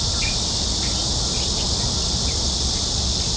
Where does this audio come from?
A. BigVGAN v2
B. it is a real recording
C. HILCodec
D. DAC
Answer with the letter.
B